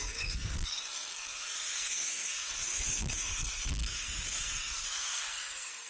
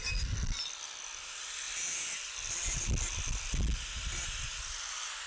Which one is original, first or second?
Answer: second